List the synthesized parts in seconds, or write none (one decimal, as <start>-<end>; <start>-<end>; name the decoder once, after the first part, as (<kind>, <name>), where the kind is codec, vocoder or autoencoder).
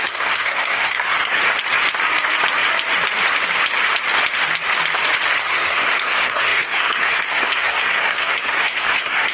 0.0-1.4 (codec, SNAC); 5.3-9.3